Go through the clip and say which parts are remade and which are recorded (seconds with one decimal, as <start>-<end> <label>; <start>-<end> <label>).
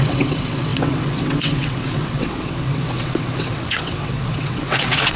0.0-5.2 remade